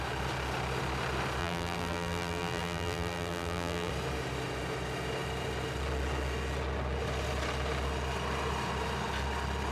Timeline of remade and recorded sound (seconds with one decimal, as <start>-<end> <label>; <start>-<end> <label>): 0.0-1.4 recorded; 1.4-3.9 remade; 3.9-9.7 recorded